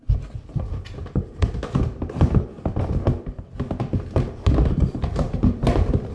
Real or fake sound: real